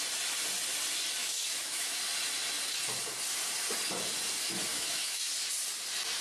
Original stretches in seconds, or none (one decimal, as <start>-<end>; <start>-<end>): 0.0-1.2; 2.0-4.7; 5.3-6.2